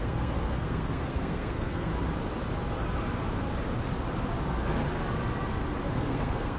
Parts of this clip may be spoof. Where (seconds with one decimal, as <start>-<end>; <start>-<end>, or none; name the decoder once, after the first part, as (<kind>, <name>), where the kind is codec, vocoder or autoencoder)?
0.0-1.9 (codec, SNAC); 5.9-6.6